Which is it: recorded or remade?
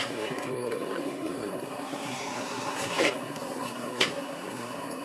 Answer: remade